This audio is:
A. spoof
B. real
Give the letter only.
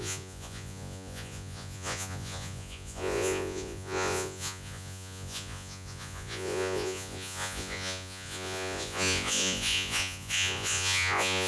A